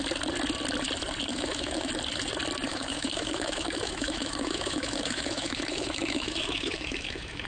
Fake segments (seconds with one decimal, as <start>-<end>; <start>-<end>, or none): 1.3-1.9; 2.7-7.5